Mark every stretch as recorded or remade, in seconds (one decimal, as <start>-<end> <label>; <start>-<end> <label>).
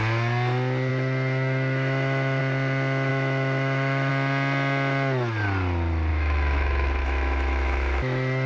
0.0-0.9 recorded; 0.9-2.4 remade; 2.4-3.1 recorded; 3.1-4.1 remade; 4.1-6.1 recorded; 6.1-8.5 remade